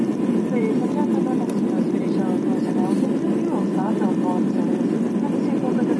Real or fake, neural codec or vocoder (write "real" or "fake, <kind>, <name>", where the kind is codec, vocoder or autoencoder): real